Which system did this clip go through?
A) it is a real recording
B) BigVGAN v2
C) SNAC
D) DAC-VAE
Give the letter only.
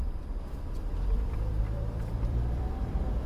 B